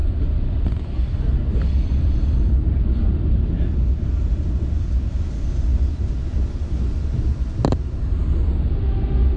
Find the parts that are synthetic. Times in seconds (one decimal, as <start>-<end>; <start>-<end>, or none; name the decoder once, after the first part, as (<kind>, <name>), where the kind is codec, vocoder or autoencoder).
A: 0.0-5.2 (vocoder, BigVGAN v2)